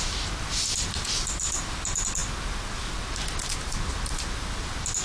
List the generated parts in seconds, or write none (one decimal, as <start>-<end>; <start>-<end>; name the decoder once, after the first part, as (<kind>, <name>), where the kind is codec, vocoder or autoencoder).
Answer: none